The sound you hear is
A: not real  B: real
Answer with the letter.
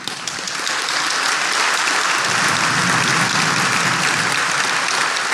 B